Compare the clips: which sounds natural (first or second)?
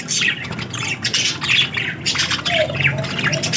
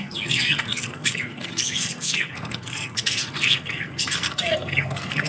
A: first